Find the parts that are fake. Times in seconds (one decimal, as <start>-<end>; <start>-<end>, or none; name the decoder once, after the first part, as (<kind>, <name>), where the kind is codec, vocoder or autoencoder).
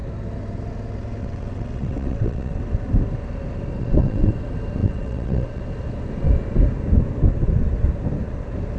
1.2-2.6 (vocoder, WaveNeXt); 3.8-4.3; 4.8-5.6